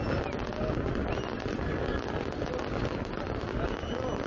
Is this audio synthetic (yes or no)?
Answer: no